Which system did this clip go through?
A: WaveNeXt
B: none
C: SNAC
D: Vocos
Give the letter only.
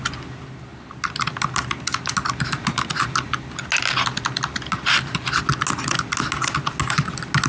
B